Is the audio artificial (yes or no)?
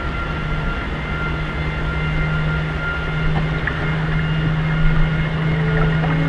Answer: no